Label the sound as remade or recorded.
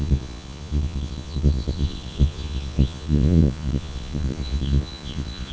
remade